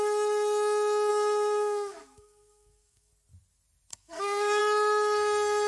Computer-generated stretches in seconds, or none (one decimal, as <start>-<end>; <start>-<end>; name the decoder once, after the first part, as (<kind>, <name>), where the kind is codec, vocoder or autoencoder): 1.1-3.1 (codec, SNAC); 3.9-4.6